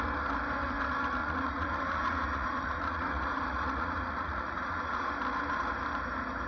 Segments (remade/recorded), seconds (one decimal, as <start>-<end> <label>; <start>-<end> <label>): 0.0-1.2 recorded; 1.2-5.1 remade; 5.1-6.5 recorded